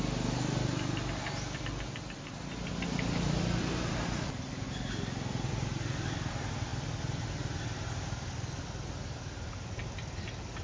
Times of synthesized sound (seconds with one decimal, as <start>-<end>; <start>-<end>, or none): none